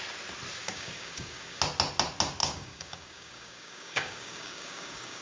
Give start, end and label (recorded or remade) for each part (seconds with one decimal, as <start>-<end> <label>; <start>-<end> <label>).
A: 0.0-0.6 recorded; 0.6-1.6 remade; 1.6-2.4 recorded; 2.4-5.2 remade